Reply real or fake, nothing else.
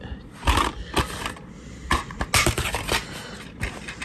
real